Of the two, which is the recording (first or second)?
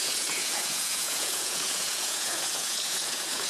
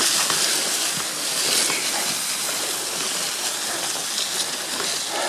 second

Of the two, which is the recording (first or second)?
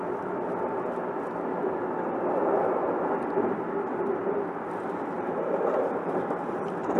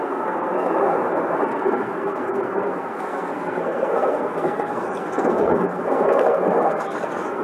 first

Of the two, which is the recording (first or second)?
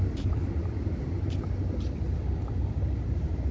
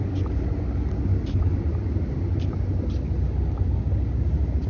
second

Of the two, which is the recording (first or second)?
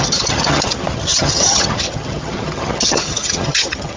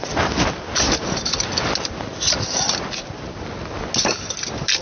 second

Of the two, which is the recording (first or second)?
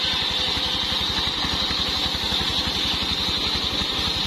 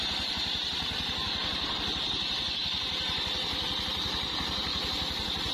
first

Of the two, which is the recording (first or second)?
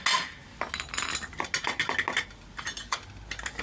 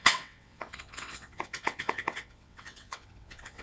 first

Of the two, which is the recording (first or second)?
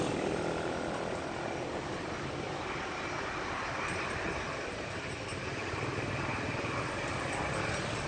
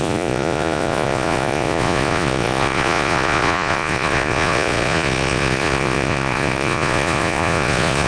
first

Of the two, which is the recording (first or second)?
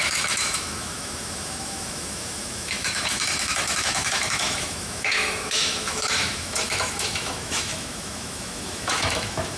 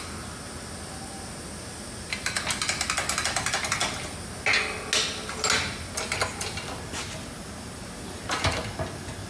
second